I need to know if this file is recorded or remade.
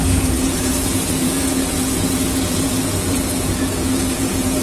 remade